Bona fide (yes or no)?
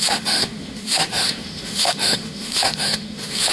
no